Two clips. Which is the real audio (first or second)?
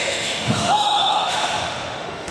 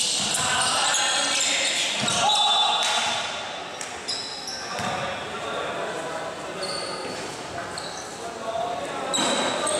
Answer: second